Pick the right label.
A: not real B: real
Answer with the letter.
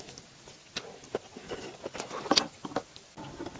B